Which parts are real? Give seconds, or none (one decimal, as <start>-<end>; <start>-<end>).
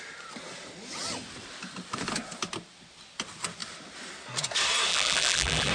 0.0-4.9